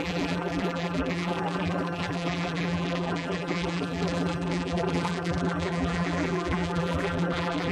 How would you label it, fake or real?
fake